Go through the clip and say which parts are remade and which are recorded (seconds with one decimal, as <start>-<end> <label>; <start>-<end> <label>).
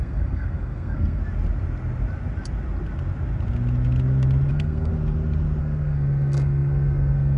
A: 0.0-1.2 remade; 1.2-4.5 recorded; 4.5-4.9 remade; 4.9-5.6 recorded; 5.6-7.4 remade